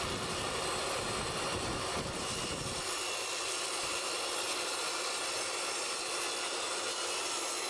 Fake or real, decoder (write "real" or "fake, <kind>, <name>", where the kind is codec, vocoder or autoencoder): real